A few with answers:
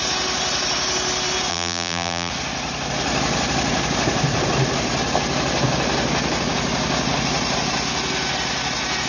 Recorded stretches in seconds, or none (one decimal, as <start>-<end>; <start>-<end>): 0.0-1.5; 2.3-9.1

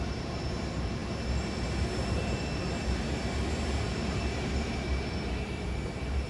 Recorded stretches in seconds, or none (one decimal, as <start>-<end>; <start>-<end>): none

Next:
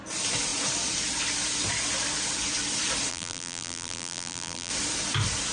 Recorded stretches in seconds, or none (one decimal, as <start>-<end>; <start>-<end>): 0.0-3.1; 4.7-5.5

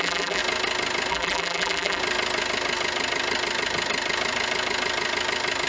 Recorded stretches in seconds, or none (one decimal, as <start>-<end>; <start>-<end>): 0.4-1.1; 2.0-5.7

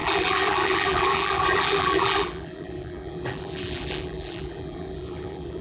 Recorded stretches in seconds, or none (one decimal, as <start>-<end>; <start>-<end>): none

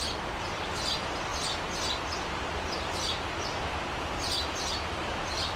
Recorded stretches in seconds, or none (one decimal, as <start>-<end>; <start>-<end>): 0.0-5.6

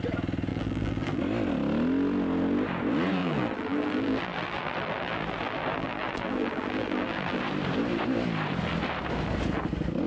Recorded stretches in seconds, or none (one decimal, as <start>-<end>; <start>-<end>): 0.0-0.5; 1.2-3.2; 7.4-10.1